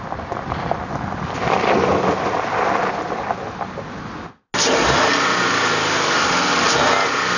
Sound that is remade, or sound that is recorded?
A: recorded